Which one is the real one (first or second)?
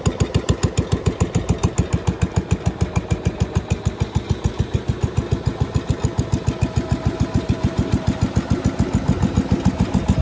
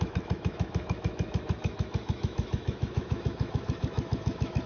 first